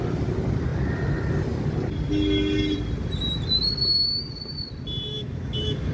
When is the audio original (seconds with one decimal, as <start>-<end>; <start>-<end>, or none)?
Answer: 0.0-5.1